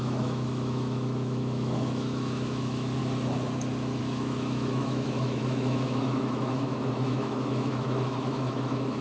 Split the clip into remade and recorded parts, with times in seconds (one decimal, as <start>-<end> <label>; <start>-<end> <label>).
0.0-3.0 remade; 3.0-4.0 recorded; 4.0-9.0 remade